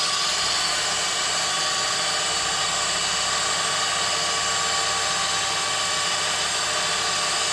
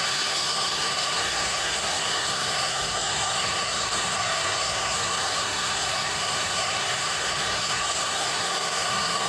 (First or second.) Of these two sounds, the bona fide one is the first